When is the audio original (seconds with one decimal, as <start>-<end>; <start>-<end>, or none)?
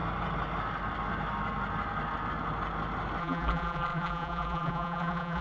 0.0-3.2